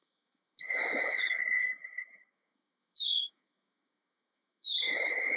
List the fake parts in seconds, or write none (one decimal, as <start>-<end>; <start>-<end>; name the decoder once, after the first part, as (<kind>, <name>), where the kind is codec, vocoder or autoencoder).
0.0-5.4 (autoencoder, DAC-VAE)